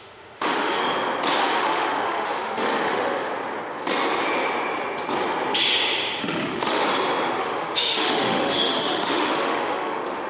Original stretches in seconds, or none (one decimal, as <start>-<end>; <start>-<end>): 0.8-1.4; 3.3-6.2; 6.8-7.4